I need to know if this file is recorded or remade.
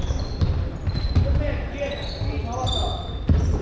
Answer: recorded